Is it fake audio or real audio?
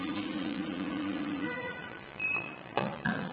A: fake